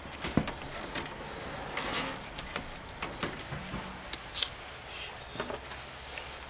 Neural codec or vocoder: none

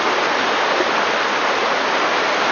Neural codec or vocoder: none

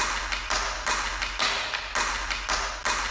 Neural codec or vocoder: none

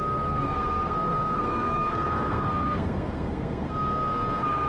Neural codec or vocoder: codec, SNAC